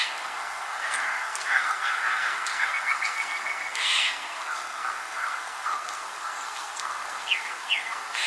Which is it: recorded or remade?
remade